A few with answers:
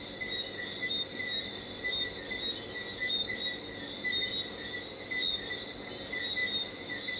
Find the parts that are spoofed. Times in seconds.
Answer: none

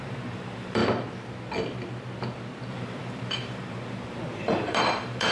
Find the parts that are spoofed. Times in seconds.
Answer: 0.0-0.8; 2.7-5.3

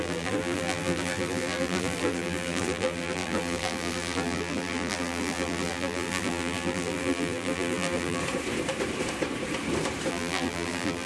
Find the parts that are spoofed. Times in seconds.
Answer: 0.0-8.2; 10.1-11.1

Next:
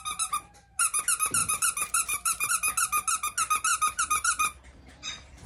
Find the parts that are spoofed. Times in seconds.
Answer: 1.4-2.5; 3.7-5.5

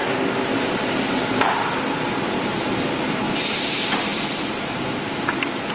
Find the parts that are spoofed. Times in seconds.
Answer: none